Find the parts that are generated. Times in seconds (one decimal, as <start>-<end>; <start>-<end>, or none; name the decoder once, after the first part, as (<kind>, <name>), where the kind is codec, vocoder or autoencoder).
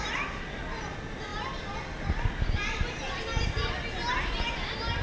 none